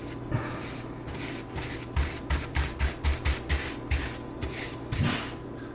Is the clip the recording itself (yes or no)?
yes